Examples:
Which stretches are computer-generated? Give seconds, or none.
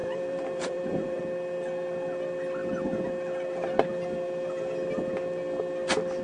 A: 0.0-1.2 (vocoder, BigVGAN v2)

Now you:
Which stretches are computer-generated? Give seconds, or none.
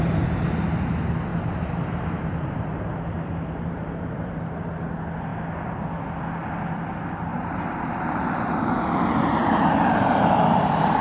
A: 1.3-4.4 (vocoder, BigVGAN v2); 7.3-8.2; 9.4-10.3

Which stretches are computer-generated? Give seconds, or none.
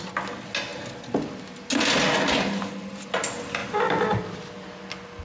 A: none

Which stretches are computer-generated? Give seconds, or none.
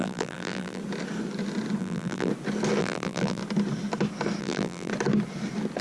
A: 0.0-0.8 (vocoder, BigVGAN v2); 1.8-2.3; 2.8-3.4; 4.4-4.9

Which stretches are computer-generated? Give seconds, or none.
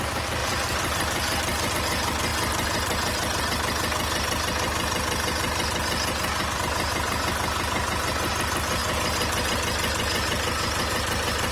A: 0.4-1.7 (vocoder, BigVGAN v2); 2.3-3.4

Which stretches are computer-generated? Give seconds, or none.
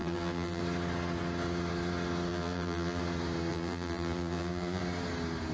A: 0.0-0.6 (vocoder, BigVGAN v2); 2.3-3.0; 3.5-4.8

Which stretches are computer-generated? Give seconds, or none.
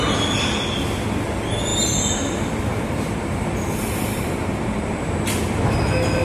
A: 1.7-5.1 (vocoder, BigVGAN v2)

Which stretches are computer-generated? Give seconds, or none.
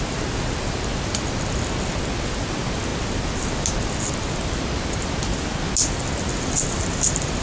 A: none